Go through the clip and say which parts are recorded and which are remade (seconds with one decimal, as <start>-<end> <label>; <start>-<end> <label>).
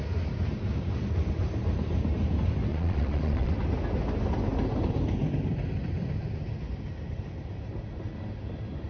0.0-2.7 recorded; 2.7-3.5 remade; 3.5-8.9 recorded